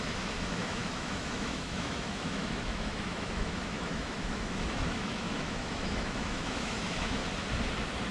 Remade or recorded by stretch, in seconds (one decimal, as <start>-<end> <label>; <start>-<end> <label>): 0.0-7.2 remade; 7.2-8.1 recorded